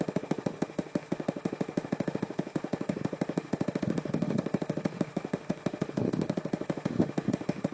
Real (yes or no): no